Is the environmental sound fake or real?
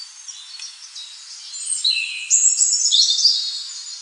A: real